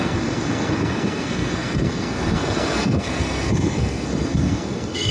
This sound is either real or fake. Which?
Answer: fake